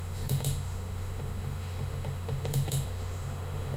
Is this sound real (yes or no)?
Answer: no